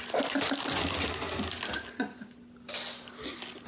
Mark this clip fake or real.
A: real